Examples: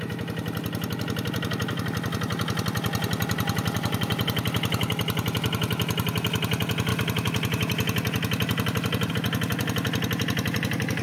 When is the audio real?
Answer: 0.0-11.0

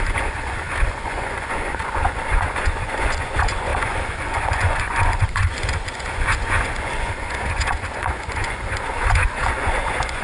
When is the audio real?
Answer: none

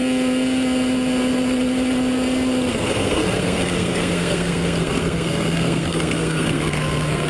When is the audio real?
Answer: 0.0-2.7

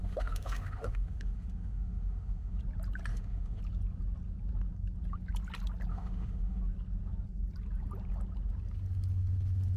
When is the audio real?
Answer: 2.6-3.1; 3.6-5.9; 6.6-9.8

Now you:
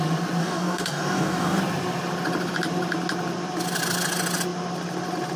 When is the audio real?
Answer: 0.0-0.4; 1.6-5.4